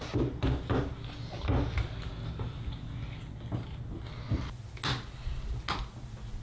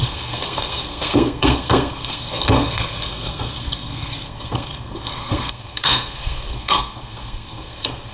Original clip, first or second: first